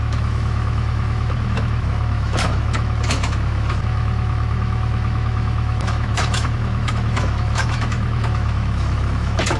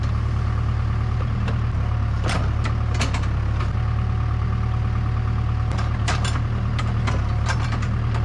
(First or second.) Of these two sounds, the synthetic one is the first